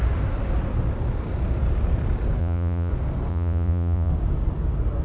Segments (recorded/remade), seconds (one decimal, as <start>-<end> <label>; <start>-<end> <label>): 0.0-2.4 recorded; 2.4-2.9 remade; 2.9-3.3 recorded; 3.3-4.1 remade; 4.1-5.0 recorded